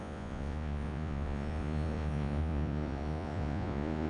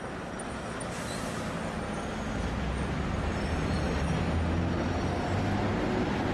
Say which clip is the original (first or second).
second